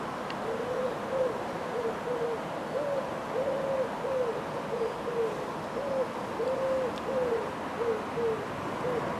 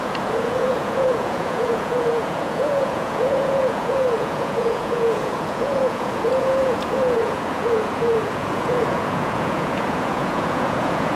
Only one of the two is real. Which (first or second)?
first